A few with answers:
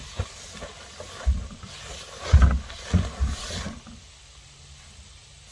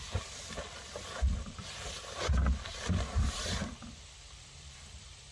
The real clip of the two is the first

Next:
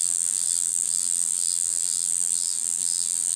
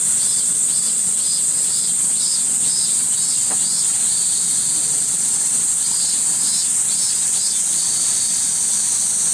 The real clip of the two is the second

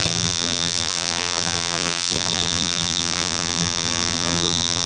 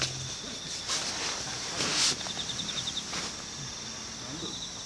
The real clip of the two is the second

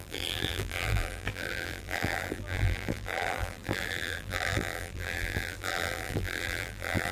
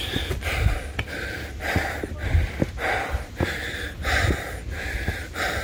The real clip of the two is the second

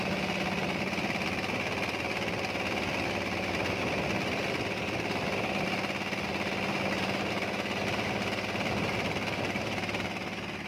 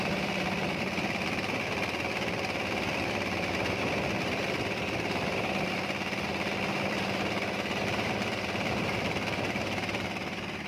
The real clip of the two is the first